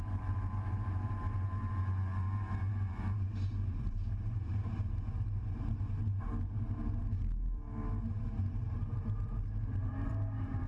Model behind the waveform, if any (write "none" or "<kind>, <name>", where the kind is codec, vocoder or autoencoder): vocoder, BigVGAN v2